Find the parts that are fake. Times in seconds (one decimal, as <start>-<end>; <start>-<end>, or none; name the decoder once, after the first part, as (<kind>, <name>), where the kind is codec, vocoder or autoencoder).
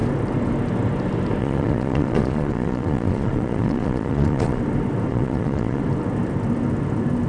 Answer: 1.4-4.6 (vocoder, Vocos); 5.1-5.8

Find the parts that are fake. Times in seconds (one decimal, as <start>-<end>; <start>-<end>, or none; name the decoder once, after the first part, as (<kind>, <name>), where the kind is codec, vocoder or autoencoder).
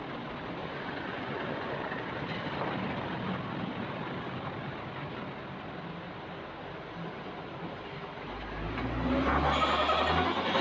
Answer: 0.6-2.0 (vocoder, Vocos)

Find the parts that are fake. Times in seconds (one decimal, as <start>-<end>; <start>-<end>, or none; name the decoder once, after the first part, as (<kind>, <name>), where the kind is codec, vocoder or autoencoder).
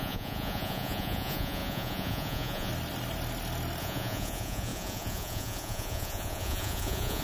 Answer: 0.0-2.7 (vocoder, Vocos); 3.8-7.2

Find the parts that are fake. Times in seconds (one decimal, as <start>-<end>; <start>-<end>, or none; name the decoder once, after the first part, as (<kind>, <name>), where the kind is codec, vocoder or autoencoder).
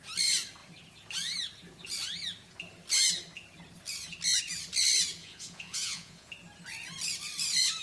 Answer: 5.2-6.3 (vocoder, Vocos)